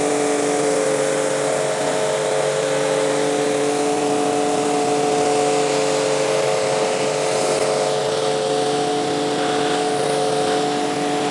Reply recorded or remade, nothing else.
recorded